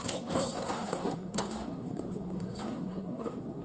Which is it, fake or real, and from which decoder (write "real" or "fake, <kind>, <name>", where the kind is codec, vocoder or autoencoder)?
fake, codec, SNAC